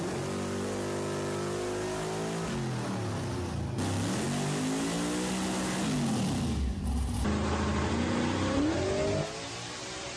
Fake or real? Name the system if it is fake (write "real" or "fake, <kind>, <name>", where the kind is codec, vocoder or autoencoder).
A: real